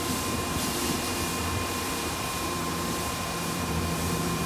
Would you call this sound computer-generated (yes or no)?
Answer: yes